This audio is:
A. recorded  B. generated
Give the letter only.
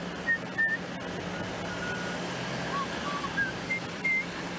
A